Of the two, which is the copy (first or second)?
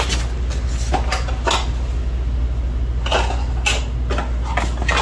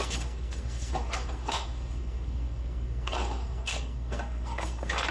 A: second